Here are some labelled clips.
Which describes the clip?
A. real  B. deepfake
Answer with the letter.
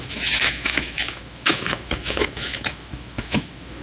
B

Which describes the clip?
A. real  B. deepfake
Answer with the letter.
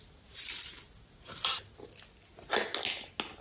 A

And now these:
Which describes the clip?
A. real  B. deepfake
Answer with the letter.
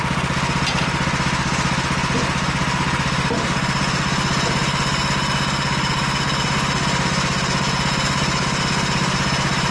A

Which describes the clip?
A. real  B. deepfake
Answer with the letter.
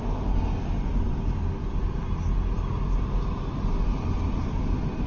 A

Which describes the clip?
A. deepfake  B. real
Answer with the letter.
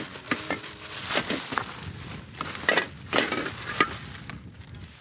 B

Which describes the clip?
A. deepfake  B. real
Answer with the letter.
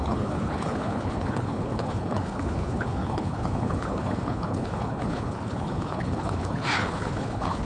A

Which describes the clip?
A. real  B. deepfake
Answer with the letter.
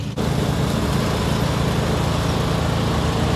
A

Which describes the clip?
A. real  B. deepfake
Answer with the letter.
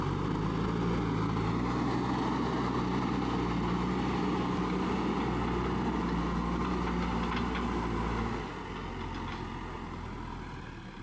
A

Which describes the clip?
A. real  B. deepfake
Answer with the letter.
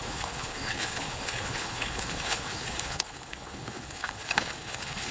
B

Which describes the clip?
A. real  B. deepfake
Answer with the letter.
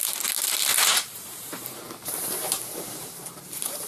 B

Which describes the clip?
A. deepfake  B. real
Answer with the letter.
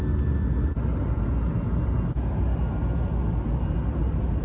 B